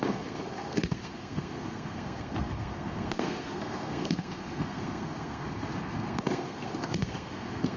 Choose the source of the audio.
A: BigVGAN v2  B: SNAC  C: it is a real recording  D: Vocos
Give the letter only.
B